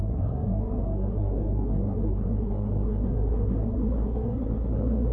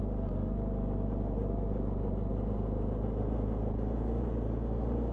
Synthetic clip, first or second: first